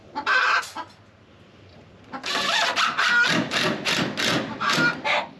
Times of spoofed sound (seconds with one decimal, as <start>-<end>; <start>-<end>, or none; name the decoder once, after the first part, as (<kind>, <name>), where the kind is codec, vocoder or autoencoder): 0.0-0.6 (vocoder, BigVGAN v2)

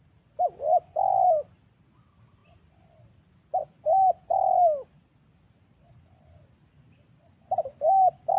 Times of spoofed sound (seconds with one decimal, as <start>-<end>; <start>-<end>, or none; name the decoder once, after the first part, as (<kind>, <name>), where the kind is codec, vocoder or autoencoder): none

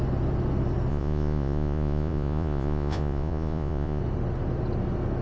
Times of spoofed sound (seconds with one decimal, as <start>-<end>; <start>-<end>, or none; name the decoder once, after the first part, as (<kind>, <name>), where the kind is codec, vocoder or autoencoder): 0.9-4.0 (vocoder, Vocos)

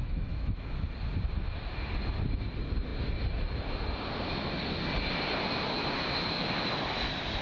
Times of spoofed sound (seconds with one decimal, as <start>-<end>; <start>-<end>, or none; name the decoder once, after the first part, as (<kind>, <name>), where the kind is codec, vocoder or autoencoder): 0.0-0.7 (autoencoder, DAC-VAE)

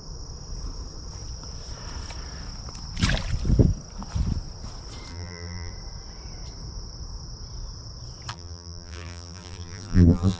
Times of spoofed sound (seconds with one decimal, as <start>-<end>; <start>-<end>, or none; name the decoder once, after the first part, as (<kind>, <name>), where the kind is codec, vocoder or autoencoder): 5.1-5.7 (vocoder, BigVGAN v2); 8.3-10.4

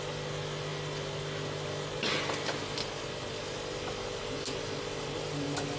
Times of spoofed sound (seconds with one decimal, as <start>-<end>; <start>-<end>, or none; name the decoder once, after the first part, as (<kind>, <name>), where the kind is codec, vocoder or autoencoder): none